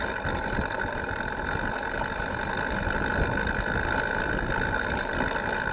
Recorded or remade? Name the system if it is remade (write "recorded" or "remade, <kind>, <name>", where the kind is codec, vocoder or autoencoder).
recorded